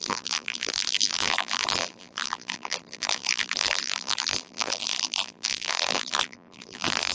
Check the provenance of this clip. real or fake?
fake